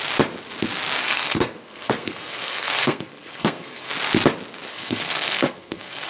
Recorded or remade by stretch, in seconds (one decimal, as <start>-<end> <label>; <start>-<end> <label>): 0.0-1.0 recorded; 1.0-3.9 remade; 3.9-4.7 recorded; 4.7-6.1 remade